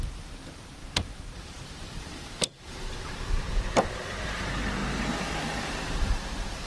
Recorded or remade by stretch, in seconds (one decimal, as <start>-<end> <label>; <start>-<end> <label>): 0.0-4.8 remade; 4.8-6.7 recorded